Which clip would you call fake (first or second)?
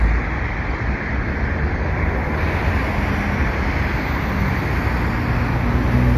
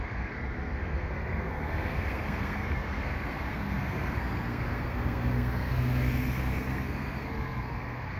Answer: second